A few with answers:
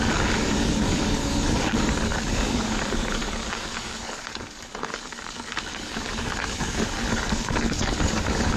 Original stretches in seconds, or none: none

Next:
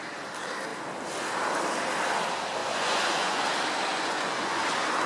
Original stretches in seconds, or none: 0.0-2.6; 3.4-3.9; 4.6-5.1

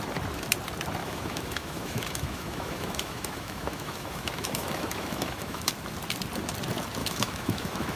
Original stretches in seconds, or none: 0.0-1.0; 5.7-7.0

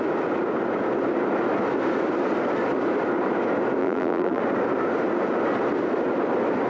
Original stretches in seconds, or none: 0.0-3.8; 4.4-6.7

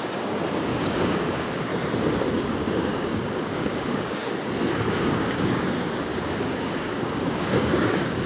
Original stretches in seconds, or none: 1.7-2.3; 4.2-4.9

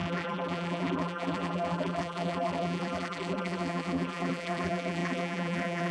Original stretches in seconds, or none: none

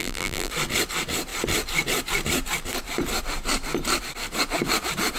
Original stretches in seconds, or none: 0.5-5.2

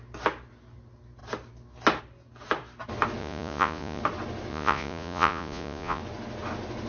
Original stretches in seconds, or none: 0.0-3.2; 4.0-4.5; 6.0-6.9